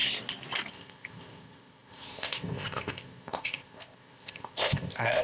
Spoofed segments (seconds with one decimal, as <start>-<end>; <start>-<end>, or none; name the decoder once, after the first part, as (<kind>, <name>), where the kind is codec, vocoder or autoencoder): 0.7-5.2 (codec, ZipCodec)